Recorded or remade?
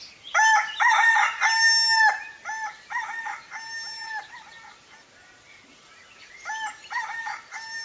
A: recorded